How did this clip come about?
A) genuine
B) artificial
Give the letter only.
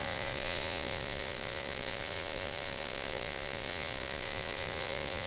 B